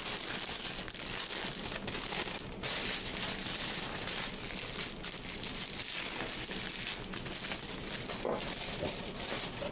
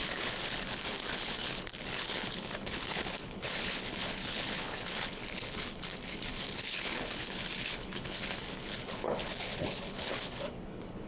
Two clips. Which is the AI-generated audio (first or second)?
second